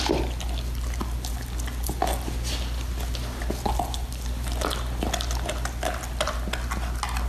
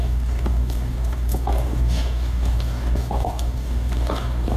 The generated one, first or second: second